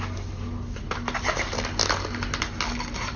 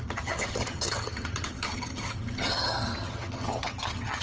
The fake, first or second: second